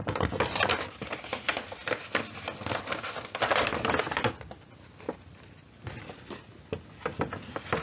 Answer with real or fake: real